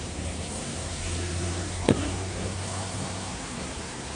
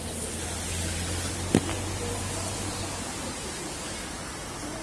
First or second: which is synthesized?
first